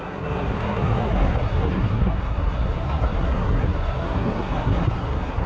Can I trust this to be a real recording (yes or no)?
no